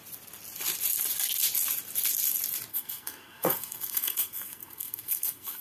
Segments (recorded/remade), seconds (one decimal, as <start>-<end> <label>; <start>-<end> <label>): 0.0-2.7 recorded; 2.7-5.6 remade